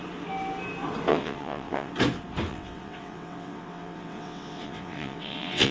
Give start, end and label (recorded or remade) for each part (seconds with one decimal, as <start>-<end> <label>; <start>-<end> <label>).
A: 0.0-1.1 recorded; 1.1-1.9 remade; 1.9-2.5 recorded; 2.5-5.7 remade